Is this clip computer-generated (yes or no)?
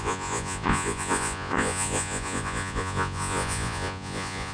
yes